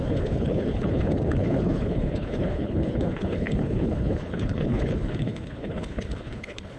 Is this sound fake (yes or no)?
yes